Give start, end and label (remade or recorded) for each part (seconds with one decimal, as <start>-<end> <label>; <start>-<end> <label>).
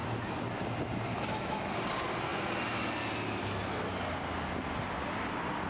0.0-1.1 recorded; 1.1-1.7 remade; 1.7-5.7 recorded